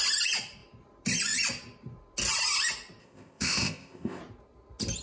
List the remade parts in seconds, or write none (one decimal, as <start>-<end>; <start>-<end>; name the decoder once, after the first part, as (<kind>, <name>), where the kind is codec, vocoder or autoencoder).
3.0-4.2 (codec, ZipCodec)